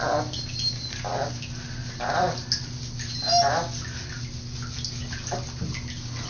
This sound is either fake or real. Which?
real